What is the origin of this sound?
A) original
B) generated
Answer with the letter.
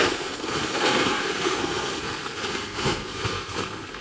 B